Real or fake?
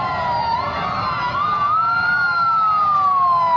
real